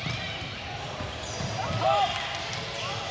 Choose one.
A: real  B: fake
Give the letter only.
A